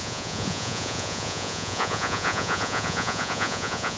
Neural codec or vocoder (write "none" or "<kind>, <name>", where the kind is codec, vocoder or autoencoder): vocoder, Vocos